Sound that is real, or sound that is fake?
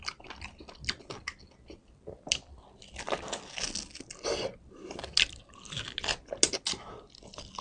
real